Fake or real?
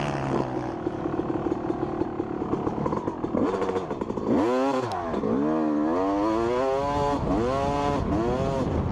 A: real